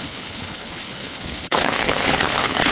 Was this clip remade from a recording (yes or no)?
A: yes